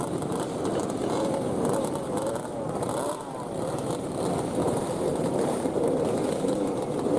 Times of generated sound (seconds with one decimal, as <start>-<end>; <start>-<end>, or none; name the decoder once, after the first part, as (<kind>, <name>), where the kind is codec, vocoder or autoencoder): 4.6-5.9 (vocoder, BigVGAN v2)